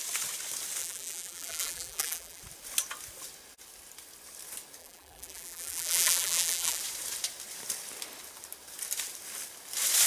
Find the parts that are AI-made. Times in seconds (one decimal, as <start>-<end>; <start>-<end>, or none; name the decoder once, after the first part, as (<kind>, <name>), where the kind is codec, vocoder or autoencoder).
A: 0.8-2.4 (vocoder, BigVGAN v2); 4.8-6.8